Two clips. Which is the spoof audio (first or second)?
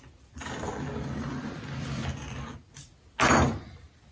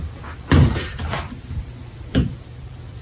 second